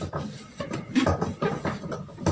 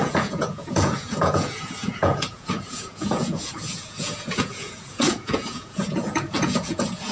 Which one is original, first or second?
first